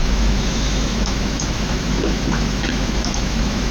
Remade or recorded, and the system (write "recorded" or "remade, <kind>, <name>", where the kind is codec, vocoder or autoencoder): remade, autoencoder, DAC-VAE